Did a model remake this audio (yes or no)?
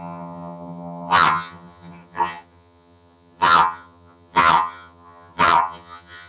yes